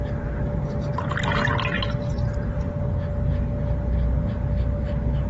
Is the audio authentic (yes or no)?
yes